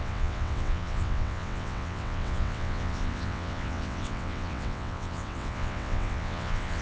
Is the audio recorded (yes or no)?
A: no